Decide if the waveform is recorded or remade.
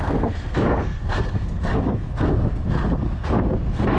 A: remade